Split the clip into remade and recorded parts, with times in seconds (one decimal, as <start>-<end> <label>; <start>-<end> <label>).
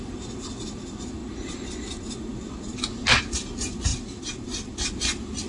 0.0-1.2 remade; 1.2-3.2 recorded; 3.2-5.5 remade